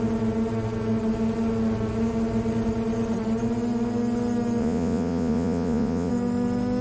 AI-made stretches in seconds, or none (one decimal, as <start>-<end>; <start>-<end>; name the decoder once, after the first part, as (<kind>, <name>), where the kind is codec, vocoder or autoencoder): 4.6-6.1 (vocoder, Vocos)